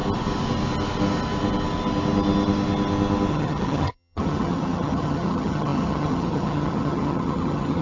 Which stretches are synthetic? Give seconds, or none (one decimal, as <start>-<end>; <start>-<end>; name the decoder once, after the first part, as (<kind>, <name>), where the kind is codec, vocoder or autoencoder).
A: 3.3-7.8 (vocoder, HiFi-GAN)